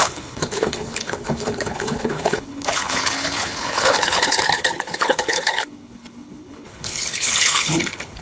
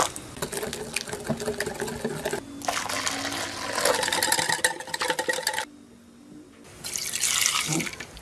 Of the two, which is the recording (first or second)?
second